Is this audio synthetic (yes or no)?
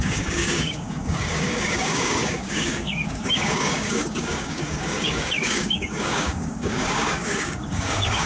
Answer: yes